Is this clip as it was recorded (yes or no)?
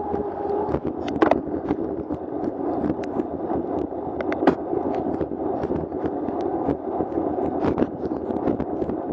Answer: yes